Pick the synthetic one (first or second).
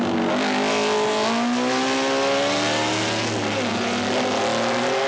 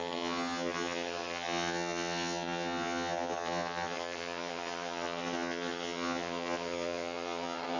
second